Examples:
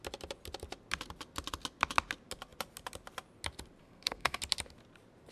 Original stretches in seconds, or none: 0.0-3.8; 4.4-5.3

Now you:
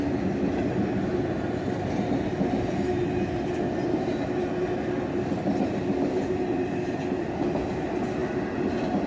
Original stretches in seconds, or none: 0.0-9.1